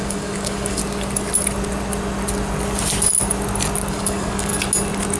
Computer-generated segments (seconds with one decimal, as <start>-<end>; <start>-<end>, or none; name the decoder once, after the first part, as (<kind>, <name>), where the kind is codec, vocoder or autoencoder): 0.0-0.8 (codec, DAC); 3.9-4.5